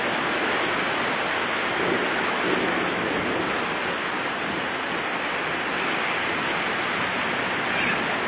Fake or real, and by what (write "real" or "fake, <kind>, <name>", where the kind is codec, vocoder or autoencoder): real